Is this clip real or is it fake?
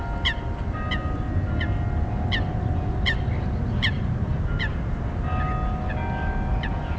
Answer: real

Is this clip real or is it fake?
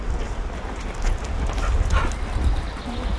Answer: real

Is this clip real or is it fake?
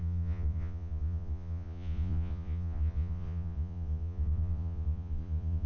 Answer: fake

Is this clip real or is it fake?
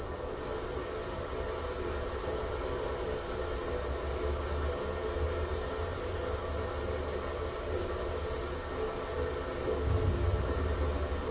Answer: real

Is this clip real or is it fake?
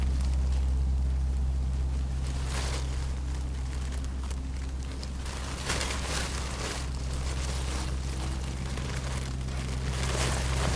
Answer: real